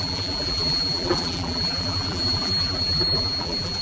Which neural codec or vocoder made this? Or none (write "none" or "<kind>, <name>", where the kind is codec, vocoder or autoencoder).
vocoder, BigVGAN v2